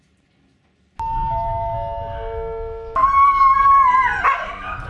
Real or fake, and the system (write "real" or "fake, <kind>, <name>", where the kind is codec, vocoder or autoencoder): real